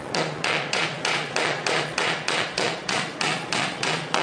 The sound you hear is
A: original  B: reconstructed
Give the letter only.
B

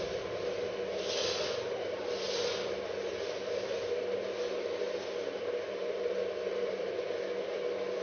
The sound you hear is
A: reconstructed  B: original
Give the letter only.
B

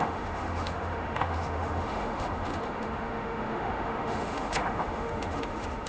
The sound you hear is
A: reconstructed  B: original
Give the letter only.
A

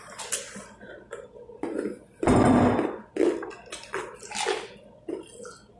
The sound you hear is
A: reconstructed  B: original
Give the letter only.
B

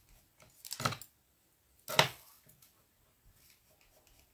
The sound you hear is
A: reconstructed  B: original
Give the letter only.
B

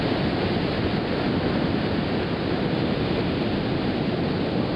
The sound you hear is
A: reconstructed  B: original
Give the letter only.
B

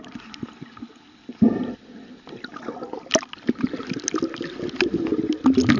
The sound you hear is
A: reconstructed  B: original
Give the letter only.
B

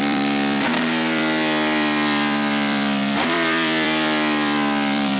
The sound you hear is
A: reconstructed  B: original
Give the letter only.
A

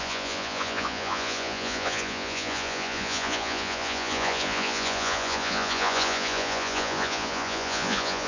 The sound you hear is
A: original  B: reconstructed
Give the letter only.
B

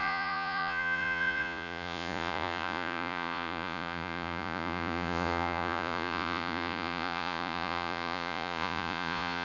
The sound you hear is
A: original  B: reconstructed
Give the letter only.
B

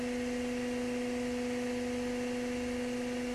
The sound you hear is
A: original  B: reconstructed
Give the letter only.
A